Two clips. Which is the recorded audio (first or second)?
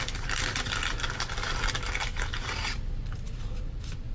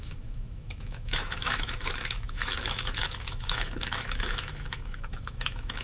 first